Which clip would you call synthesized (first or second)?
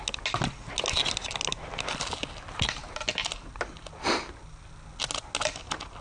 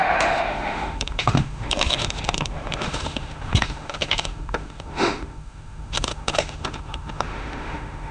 second